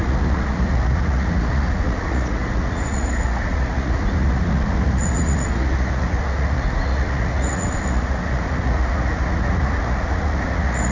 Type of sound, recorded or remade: remade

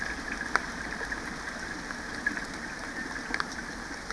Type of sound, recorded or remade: recorded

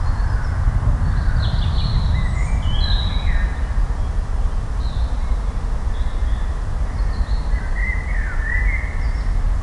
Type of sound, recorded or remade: recorded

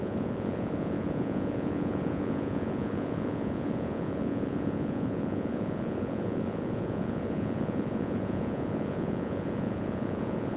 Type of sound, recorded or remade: remade